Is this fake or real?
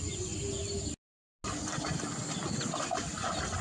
real